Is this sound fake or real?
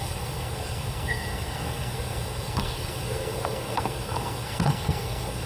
fake